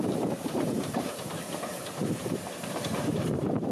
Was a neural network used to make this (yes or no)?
yes